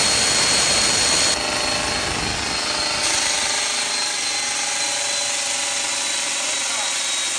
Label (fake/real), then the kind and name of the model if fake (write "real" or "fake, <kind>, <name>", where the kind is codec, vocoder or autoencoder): real